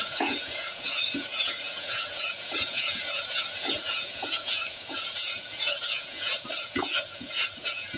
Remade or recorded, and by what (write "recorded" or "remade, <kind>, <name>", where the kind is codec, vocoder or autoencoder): remade, vocoder, Vocos